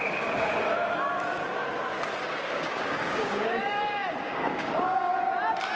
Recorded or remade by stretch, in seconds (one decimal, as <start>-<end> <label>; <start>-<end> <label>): 0.0-0.5 remade; 0.5-2.2 recorded; 2.2-5.1 remade; 5.1-5.8 recorded